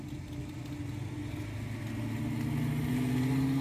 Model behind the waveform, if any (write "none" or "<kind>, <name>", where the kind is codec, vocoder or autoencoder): none